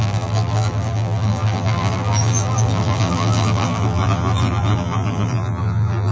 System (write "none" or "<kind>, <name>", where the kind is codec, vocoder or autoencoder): vocoder, BigVGAN v2